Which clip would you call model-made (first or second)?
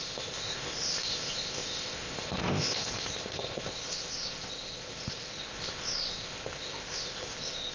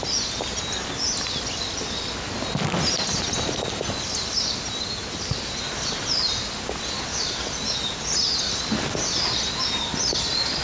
first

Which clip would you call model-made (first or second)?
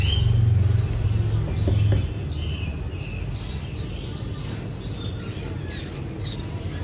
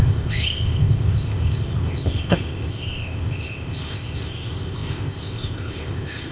second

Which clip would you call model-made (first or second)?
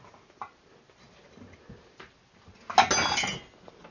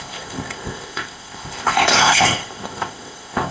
second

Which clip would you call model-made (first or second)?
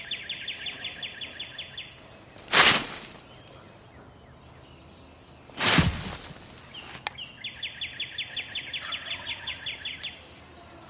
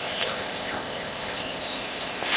second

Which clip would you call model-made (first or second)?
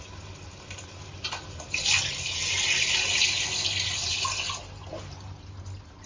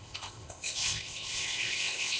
second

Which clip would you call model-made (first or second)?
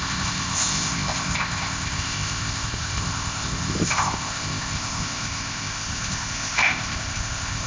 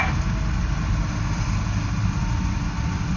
first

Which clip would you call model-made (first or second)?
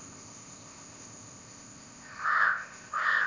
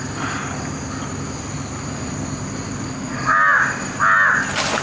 first